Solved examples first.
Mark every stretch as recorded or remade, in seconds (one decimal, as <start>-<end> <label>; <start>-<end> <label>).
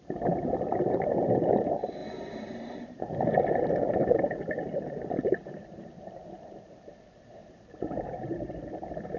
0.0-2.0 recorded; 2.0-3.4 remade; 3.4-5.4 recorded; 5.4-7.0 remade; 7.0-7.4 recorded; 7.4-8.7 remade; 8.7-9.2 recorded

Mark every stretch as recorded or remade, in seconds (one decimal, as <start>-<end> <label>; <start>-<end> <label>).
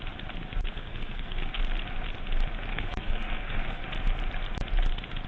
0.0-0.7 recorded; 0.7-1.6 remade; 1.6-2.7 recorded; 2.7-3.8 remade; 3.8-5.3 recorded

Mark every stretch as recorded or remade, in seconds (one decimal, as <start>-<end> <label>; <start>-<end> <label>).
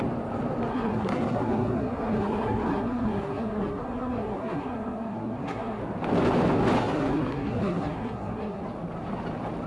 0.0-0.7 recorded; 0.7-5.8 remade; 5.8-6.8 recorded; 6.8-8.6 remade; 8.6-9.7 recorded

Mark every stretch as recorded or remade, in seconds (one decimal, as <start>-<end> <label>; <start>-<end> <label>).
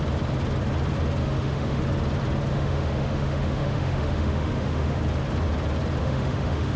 0.0-1.2 recorded; 1.2-1.8 remade; 1.8-2.5 recorded; 2.5-5.0 remade; 5.0-6.0 recorded; 6.0-6.8 remade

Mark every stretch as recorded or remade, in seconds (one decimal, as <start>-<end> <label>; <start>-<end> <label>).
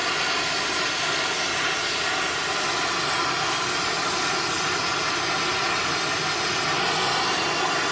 0.0-7.9 recorded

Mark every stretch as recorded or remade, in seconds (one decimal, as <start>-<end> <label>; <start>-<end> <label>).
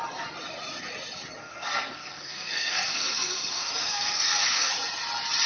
0.0-1.4 recorded; 1.4-4.7 remade; 4.7-5.5 recorded